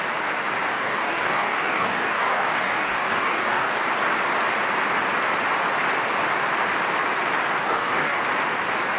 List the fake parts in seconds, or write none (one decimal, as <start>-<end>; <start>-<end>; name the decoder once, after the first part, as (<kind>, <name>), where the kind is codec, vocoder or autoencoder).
0.7-3.8 (codec, DAC); 7.6-8.2